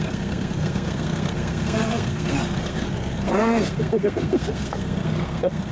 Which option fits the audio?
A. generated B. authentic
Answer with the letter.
A